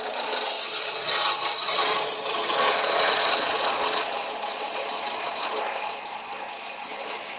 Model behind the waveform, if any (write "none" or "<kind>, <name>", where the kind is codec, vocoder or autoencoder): vocoder, Vocos